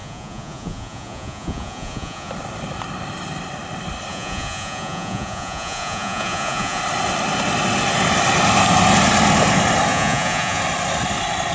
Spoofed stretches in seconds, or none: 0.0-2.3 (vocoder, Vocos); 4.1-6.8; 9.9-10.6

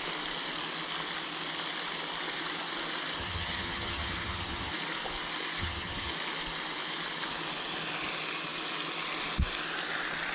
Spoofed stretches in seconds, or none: 3.2-4.7 (vocoder, HiFi-GAN); 5.6-6.1

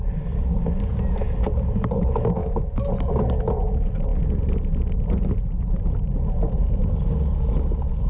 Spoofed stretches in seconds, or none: 2.4-2.9 (autoencoder, DAC-VAE)

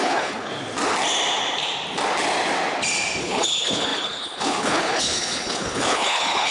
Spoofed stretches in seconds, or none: 0.0-0.5 (codec, HILCodec); 3.2-6.5

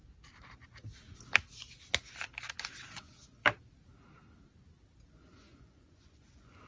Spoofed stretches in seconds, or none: 2.9-3.4 (vocoder, Vocos); 5.1-6.7

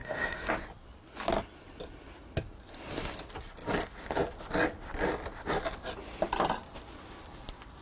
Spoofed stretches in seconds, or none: 0.0-0.5 (codec, SNAC)

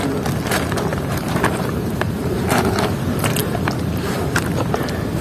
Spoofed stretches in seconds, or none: 0.9-2.3 (vocoder, BigVGAN v2)

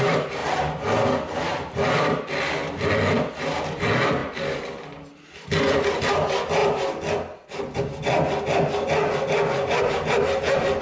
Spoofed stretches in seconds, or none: none